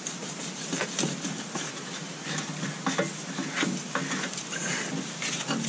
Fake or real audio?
real